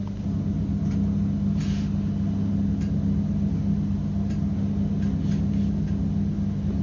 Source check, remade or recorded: recorded